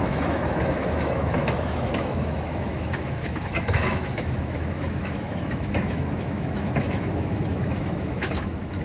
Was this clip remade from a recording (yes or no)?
yes